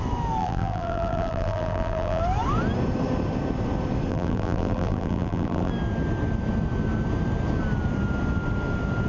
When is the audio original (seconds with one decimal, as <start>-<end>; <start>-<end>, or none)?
0.0-0.4; 2.2-4.1; 5.7-9.1